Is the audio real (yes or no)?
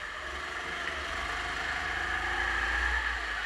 yes